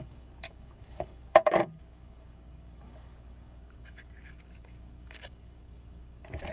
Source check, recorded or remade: remade